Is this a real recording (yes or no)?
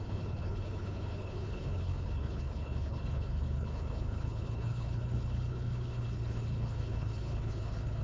no